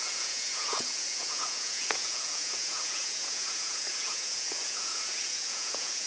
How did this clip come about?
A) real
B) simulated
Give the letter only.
B